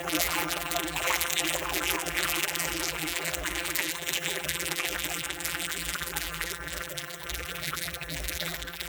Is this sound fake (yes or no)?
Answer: yes